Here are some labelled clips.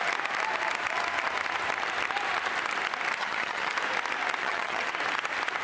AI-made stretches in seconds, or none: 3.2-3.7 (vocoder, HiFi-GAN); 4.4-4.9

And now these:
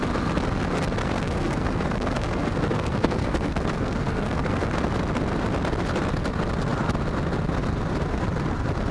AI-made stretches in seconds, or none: 1.0-4.7 (codec, SNAC)

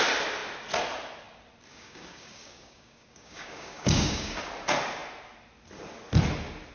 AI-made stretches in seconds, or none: 1.7-4.4 (codec, DAC)

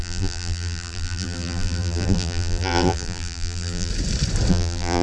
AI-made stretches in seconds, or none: 0.0-3.9 (vocoder, BigVGAN v2); 4.5-5.0

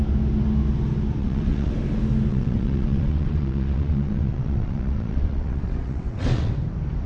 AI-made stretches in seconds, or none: 1.2-1.7 (vocoder, WaveNeXt); 2.3-6.5